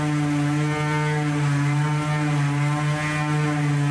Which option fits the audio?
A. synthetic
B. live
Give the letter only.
B